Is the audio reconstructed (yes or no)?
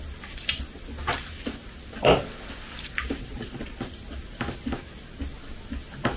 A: no